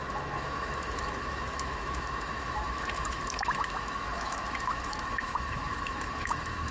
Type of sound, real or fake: fake